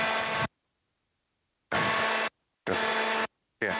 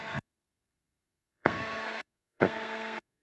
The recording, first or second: first